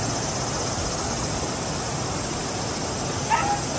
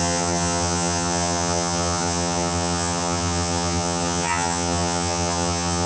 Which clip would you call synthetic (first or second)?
second